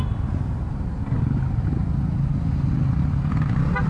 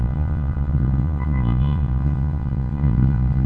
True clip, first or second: first